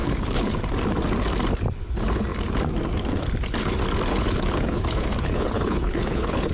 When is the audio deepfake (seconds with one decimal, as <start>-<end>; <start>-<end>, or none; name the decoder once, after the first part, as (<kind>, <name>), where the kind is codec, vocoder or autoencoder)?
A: 0.0-0.6 (codec, HILCodec); 4.1-6.5